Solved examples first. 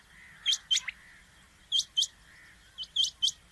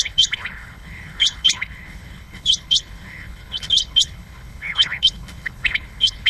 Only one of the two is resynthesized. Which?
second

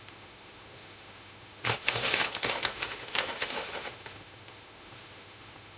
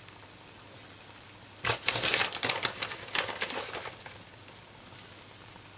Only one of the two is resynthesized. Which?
first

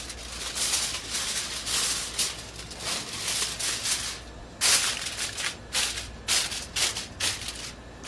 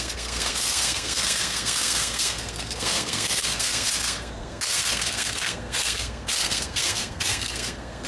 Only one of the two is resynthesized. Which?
second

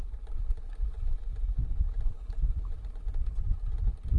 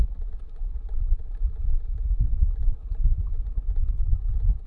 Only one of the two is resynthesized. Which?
second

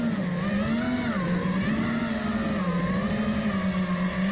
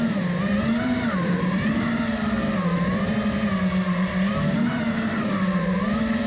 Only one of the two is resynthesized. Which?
second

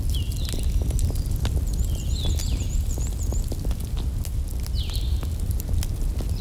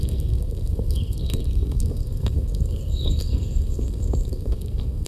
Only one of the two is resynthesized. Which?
second